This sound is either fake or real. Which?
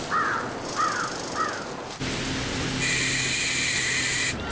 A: real